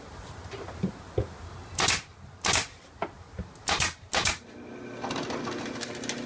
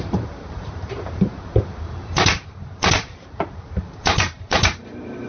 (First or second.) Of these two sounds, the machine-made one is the second